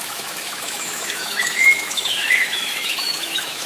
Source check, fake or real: fake